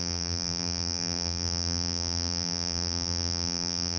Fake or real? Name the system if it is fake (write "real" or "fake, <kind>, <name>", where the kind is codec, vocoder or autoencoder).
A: fake, vocoder, BigVGAN v2